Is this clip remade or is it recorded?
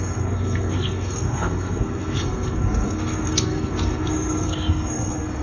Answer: remade